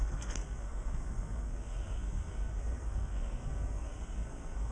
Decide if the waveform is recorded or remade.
remade